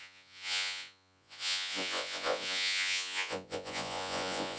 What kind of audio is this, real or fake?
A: fake